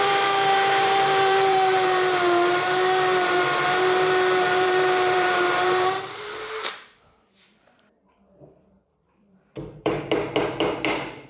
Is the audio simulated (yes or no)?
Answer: yes